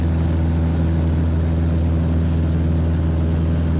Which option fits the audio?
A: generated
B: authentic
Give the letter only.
B